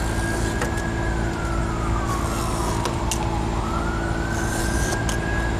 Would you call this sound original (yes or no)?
yes